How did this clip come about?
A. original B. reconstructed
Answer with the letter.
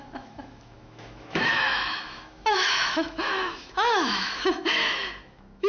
B